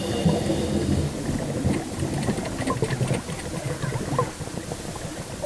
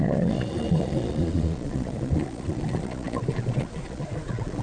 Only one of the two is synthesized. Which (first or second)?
second